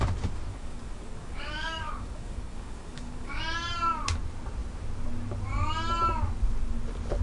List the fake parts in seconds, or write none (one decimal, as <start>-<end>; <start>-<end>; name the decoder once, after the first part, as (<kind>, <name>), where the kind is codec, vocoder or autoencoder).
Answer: 0.5-3.4 (codec, DAC)